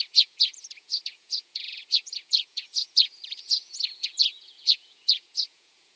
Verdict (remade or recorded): remade